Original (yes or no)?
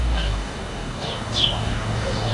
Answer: no